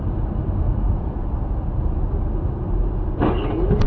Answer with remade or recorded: recorded